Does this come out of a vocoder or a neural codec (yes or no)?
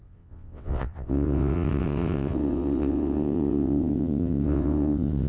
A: yes